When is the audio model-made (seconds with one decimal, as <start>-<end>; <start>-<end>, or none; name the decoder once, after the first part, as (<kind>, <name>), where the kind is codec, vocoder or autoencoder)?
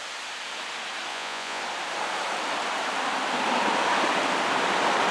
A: 1.1-1.6 (vocoder, Vocos)